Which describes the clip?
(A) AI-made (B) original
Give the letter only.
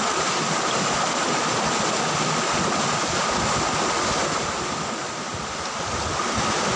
B